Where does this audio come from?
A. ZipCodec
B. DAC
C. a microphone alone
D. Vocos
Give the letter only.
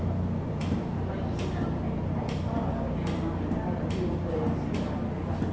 C